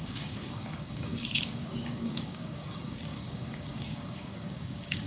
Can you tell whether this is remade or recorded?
remade